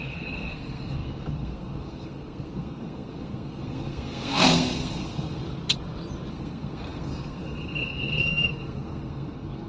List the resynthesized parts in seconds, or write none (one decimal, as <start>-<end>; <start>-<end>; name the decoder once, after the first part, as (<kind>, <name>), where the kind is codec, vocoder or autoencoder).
0.0-5.4 (codec, SNAC); 6.3-9.7